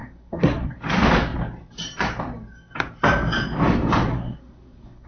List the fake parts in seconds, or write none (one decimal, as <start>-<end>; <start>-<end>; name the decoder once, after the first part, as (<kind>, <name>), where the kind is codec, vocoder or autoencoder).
0.0-0.8 (codec, SNAC); 4.1-5.1